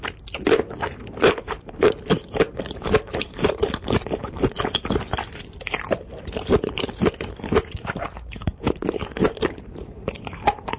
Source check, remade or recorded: remade